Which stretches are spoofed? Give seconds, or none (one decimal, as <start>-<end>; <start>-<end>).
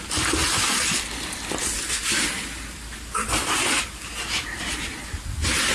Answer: none